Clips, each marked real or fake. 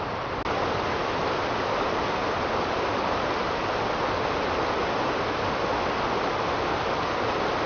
real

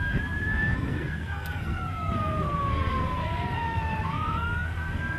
fake